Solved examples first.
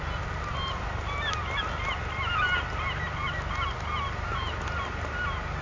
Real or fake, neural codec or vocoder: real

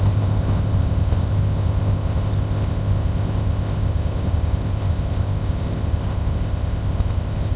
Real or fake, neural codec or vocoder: fake, codec, ZipCodec